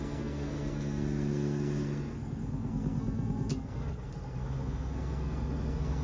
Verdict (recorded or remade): remade